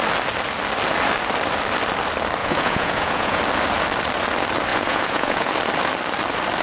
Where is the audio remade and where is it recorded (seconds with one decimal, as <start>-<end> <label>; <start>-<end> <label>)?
0.0-2.4 recorded; 2.4-3.4 remade; 3.4-4.7 recorded; 4.7-5.5 remade; 5.5-6.6 recorded